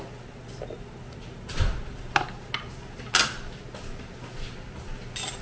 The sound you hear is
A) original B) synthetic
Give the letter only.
A